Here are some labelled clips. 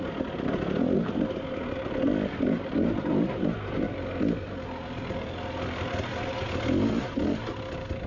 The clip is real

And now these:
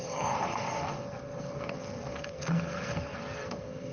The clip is fake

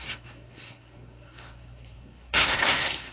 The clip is fake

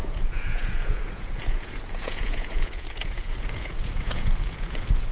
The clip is fake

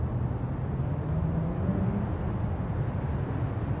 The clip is real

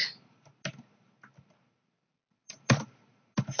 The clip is real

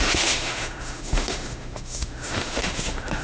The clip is fake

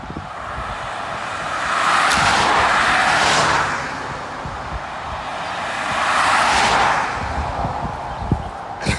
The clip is real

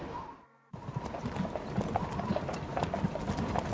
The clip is real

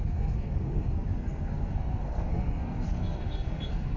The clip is fake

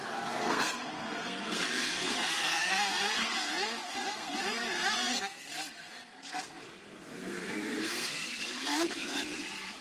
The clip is fake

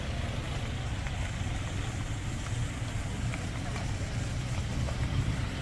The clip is real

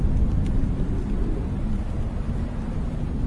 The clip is real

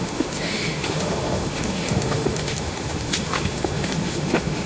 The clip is fake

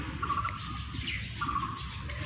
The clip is real